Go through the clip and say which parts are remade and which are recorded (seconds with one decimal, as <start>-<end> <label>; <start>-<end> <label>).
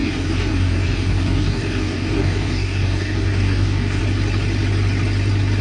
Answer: 0.0-4.0 remade; 4.0-5.6 recorded